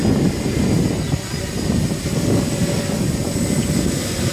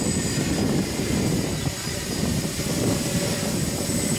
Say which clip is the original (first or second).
first